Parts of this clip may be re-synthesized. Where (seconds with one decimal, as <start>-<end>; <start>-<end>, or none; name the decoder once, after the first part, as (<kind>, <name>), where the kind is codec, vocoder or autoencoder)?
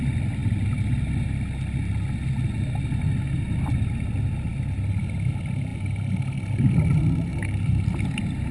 none